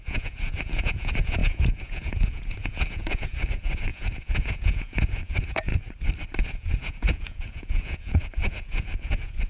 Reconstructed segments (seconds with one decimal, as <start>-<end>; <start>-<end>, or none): 0.0-5.7; 6.4-9.5